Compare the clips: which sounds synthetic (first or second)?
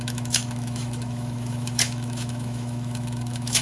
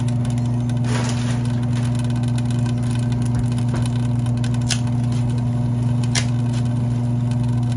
first